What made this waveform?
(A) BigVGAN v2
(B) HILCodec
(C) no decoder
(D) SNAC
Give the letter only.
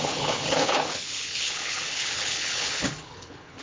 B